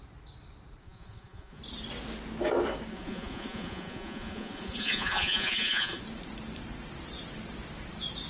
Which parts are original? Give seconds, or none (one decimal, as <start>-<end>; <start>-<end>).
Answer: 0.0-0.8; 1.6-2.9; 6.0-8.3

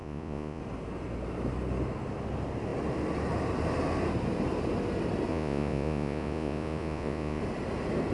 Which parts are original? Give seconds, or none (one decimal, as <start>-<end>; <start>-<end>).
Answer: 0.6-5.3; 7.4-8.1

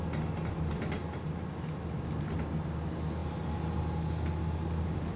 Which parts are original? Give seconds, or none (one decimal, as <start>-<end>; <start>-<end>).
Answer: 0.0-5.2

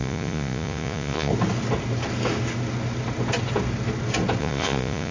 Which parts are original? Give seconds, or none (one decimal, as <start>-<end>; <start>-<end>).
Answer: 1.3-4.4

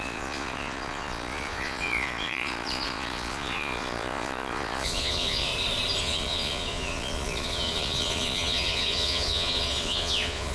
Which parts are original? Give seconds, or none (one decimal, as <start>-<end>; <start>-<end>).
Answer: 5.5-6.0

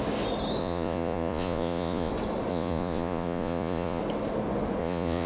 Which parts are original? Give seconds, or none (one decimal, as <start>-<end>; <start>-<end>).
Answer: 0.0-0.6; 2.1-2.5; 4.0-4.8

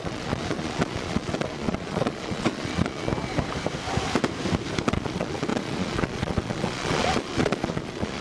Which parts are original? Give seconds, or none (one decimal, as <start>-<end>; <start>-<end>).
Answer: 3.1-4.9

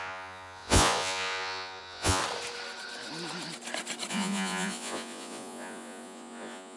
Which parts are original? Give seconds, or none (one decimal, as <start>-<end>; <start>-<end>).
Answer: 2.2-4.1